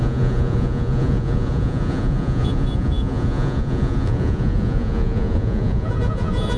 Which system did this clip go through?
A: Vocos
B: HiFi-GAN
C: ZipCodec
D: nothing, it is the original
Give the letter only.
A